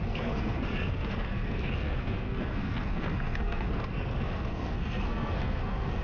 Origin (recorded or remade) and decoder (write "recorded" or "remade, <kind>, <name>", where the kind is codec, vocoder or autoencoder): remade, codec, SNAC